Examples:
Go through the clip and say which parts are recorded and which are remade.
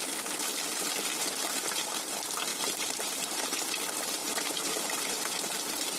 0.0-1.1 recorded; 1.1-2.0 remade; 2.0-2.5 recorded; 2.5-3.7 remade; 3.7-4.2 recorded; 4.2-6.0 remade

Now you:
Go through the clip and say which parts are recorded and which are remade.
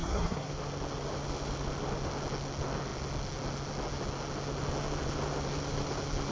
0.0-0.5 remade; 0.5-6.3 recorded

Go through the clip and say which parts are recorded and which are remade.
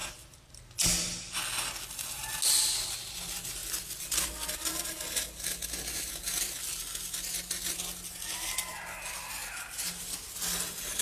0.0-0.5 remade; 0.5-11.0 recorded